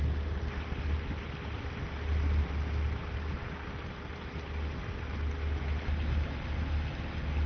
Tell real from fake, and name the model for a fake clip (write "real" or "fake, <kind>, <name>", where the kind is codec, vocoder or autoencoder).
real